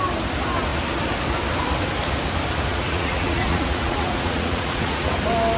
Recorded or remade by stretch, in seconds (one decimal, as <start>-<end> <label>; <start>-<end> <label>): 0.0-2.7 recorded; 2.7-5.1 remade; 5.1-5.6 recorded